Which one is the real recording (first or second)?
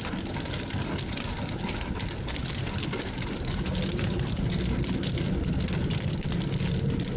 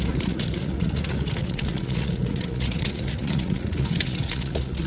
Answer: first